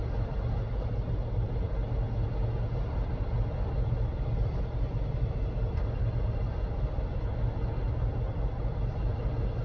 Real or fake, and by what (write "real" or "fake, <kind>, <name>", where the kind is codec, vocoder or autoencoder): real